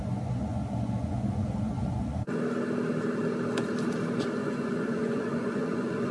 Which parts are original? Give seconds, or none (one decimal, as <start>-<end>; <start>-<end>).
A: 2.4-4.4